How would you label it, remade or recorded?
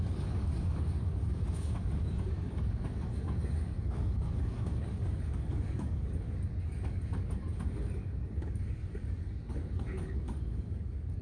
remade